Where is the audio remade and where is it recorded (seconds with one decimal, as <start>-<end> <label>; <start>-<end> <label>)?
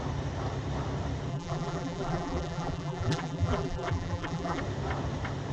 0.0-1.3 recorded; 1.3-4.6 remade; 4.6-5.5 recorded